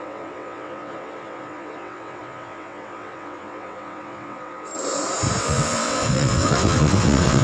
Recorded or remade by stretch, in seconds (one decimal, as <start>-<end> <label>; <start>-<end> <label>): 0.0-4.7 remade; 4.7-5.4 recorded; 5.4-7.4 remade